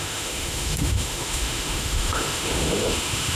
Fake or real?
fake